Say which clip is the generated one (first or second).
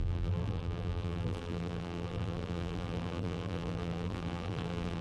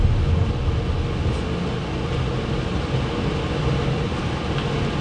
first